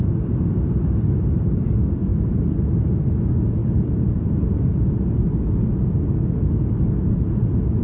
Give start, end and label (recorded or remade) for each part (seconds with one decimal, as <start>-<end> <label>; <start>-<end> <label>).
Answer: 0.0-7.8 recorded